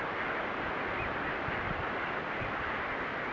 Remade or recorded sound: recorded